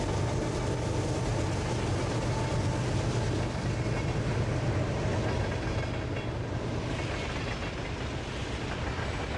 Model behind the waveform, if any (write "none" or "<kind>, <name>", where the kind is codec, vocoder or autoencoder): none